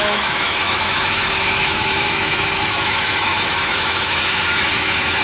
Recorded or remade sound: remade